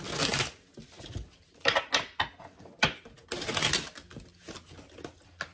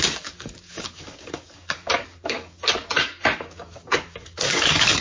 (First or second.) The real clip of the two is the first